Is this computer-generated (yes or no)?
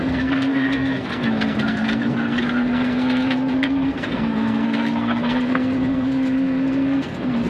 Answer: yes